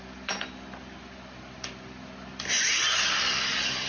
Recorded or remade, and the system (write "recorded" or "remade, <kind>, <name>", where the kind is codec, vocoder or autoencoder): recorded